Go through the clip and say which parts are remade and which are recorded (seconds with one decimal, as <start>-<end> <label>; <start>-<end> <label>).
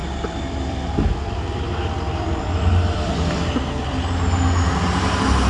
0.0-3.1 remade; 3.1-5.5 recorded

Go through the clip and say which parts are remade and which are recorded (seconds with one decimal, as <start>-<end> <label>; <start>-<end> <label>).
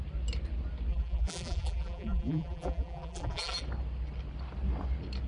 0.0-0.9 recorded; 0.9-3.6 remade; 3.6-5.3 recorded